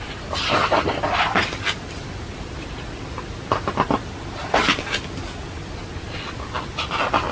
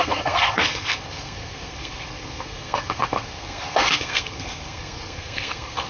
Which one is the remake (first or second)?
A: second